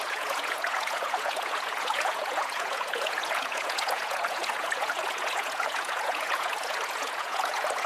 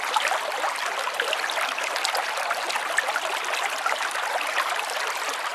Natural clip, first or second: second